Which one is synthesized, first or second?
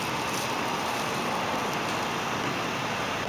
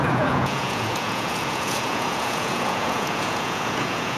second